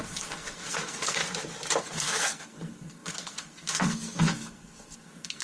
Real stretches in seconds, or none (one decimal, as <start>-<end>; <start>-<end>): 1.2-1.8